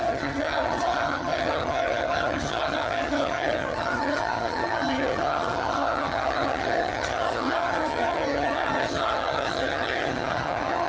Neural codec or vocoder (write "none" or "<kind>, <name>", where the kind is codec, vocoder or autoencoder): vocoder, HiFi-GAN